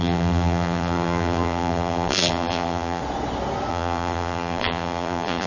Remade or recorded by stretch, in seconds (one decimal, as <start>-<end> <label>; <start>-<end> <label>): 0.0-3.0 remade; 3.0-3.7 recorded; 3.7-5.5 remade